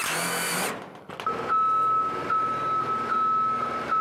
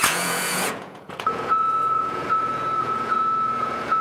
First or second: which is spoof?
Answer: second